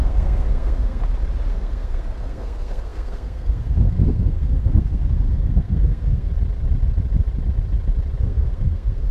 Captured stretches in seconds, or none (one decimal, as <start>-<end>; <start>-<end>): 1.0-1.5; 6.3-8.2